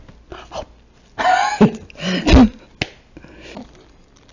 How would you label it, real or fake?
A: real